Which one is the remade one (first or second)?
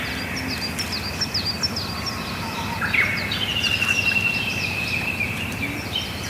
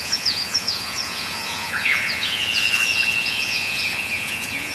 second